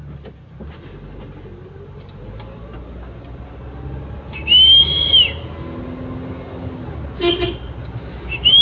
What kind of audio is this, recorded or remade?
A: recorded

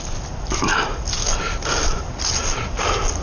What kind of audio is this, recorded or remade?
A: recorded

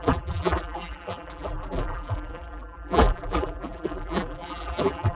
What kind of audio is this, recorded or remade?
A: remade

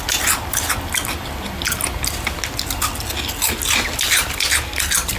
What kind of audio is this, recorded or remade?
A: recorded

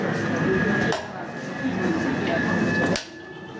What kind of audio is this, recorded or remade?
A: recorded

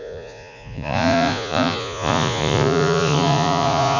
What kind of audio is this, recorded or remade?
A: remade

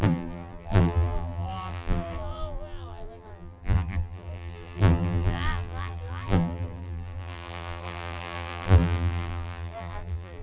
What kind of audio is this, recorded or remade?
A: remade